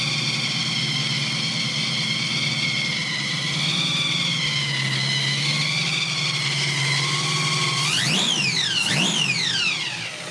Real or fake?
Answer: real